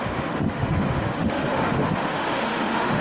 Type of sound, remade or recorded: remade